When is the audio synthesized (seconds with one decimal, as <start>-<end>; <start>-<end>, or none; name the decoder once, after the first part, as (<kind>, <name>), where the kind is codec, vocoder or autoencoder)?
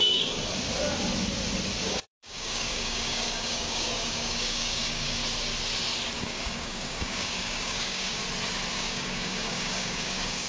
0.0-0.4 (codec, DAC); 1.8-5.2; 6.2-8.2; 8.7-10.5